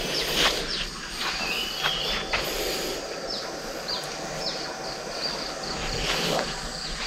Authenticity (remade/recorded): recorded